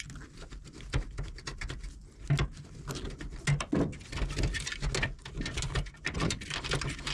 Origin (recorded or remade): recorded